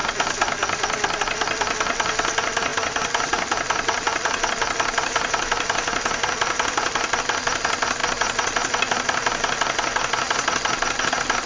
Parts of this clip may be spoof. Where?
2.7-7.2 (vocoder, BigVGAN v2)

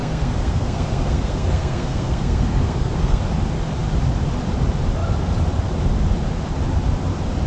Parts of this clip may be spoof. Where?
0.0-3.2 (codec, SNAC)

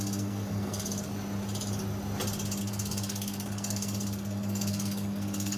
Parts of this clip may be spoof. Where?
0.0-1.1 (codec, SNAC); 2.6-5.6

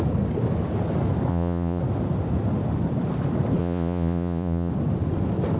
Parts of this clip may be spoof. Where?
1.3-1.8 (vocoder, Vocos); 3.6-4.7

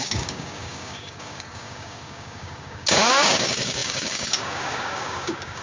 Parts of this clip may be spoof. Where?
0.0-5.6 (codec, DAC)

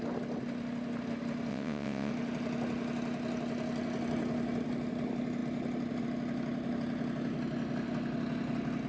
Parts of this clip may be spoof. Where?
1.5-2.1 (vocoder, WaveNeXt)